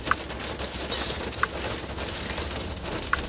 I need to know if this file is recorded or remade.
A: recorded